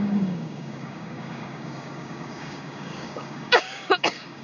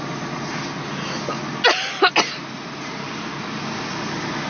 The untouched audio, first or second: second